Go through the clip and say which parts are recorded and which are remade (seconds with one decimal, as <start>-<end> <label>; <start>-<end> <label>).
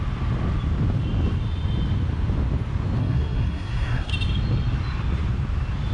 0.0-3.0 recorded; 3.0-4.1 remade; 4.1-5.9 recorded